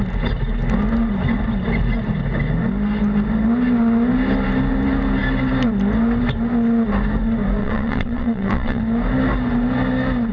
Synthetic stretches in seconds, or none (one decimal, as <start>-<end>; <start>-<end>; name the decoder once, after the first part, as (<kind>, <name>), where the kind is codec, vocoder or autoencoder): 7.6-8.8 (vocoder, WaveNeXt)